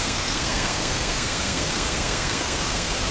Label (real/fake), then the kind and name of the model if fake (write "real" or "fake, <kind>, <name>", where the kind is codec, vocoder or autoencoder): fake, codec, SNAC